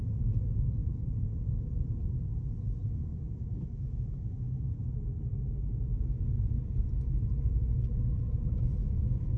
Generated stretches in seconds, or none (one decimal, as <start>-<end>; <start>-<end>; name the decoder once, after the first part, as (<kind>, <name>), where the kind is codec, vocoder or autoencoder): 3.1-4.9 (autoencoder, DAC-VAE); 8.8-9.4